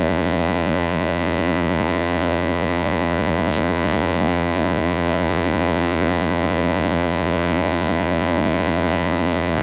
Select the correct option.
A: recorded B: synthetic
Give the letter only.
B